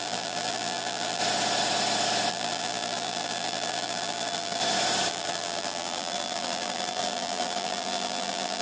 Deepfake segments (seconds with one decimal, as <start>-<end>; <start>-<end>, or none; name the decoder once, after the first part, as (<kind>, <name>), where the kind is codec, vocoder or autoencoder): 0.0-1.2 (vocoder, BigVGAN v2); 2.3-4.6; 5.1-8.6